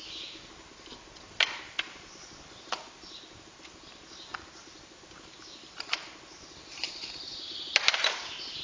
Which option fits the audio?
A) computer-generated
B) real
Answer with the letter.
B